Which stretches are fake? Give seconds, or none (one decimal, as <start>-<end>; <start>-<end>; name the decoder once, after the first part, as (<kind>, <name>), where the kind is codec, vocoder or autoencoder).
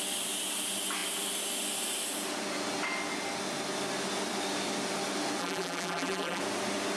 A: 5.4-6.4 (vocoder, BigVGAN v2)